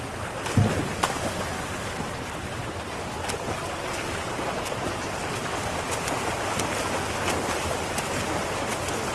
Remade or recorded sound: recorded